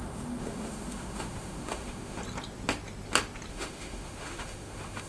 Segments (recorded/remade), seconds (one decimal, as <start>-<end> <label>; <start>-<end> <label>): 0.0-2.2 remade; 2.2-3.5 recorded; 3.5-5.1 remade